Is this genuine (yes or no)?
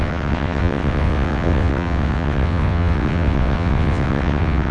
no